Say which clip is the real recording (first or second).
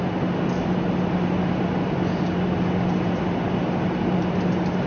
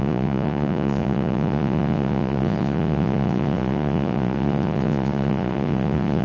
first